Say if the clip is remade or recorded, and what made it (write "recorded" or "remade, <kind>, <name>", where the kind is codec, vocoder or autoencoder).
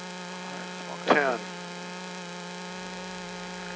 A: recorded